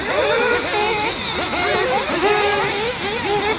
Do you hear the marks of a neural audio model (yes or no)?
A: no